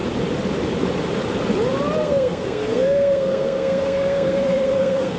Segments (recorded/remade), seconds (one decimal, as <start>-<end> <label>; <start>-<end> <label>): 0.0-2.0 recorded; 2.0-5.2 remade